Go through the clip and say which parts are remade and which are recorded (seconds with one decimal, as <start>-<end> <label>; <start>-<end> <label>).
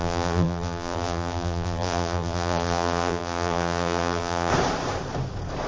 0.0-4.5 remade; 4.5-5.7 recorded